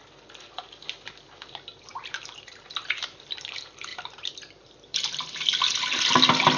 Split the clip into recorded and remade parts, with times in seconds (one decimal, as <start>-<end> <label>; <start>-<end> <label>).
0.0-1.9 recorded; 1.9-3.3 remade; 3.3-3.9 recorded; 3.9-5.1 remade; 5.1-6.6 recorded